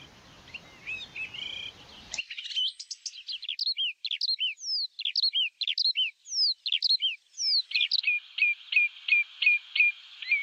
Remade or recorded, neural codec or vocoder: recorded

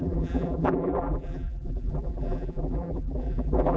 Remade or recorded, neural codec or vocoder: remade, vocoder, BigVGAN v2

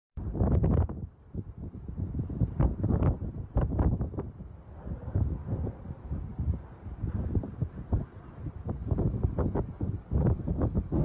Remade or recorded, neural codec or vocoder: remade, vocoder, BigVGAN v2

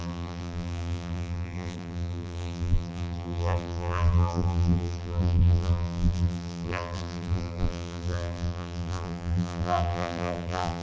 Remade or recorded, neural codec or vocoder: remade, vocoder, BigVGAN v2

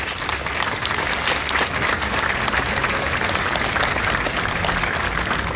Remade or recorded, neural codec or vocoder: recorded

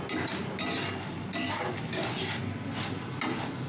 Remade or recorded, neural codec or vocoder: recorded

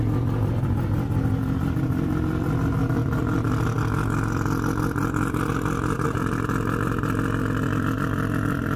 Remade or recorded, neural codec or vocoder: remade, vocoder, BigVGAN v2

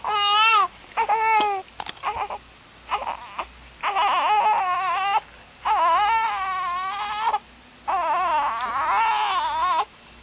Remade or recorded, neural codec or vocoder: recorded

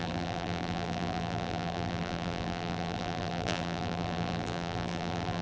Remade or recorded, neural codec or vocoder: remade, vocoder, BigVGAN v2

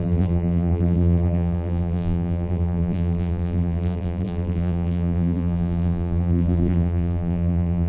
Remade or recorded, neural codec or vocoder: remade, vocoder, BigVGAN v2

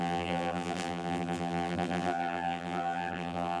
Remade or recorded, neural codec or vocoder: remade, vocoder, BigVGAN v2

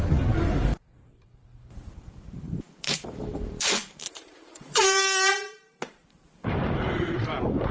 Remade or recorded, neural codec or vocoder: remade, vocoder, BigVGAN v2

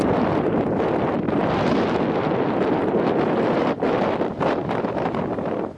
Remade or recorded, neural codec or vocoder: recorded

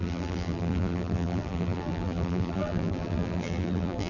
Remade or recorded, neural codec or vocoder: remade, vocoder, BigVGAN v2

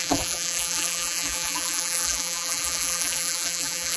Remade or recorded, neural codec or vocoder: remade, vocoder, BigVGAN v2